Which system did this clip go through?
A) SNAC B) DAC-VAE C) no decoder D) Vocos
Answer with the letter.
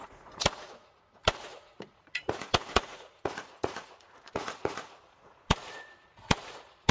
D